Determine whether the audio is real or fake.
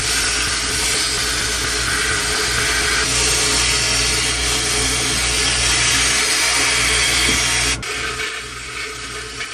real